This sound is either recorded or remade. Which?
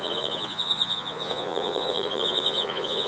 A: remade